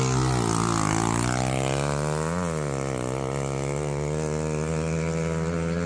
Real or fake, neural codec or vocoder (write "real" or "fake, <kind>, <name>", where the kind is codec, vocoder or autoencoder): real